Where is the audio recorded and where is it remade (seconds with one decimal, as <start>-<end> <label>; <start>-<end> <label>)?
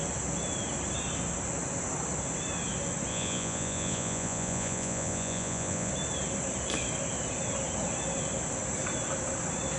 0.0-3.1 recorded; 3.1-5.9 remade; 5.9-9.8 recorded